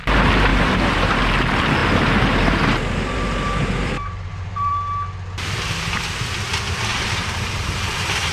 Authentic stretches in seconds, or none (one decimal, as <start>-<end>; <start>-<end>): 0.0-0.5; 1.2-1.8; 4.7-6.9